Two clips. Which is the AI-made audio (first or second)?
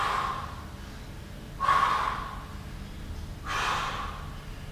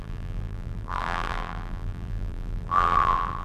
second